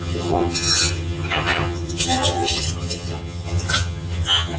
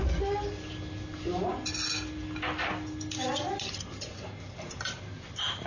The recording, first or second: second